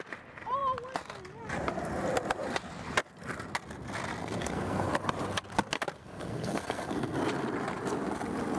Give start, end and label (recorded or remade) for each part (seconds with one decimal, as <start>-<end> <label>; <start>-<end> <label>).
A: 0.0-4.2 recorded; 4.2-4.9 remade; 4.9-6.0 recorded; 6.0-7.2 remade; 7.2-8.6 recorded